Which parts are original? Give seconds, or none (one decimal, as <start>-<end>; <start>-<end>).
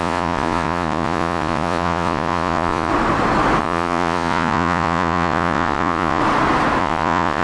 2.9-3.6; 6.2-6.8